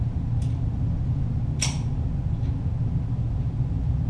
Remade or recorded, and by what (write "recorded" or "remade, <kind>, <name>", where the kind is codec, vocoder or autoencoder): recorded